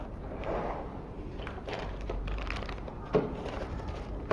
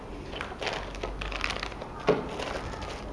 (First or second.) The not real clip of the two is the first